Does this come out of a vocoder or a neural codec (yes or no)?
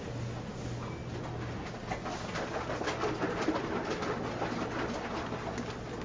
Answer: no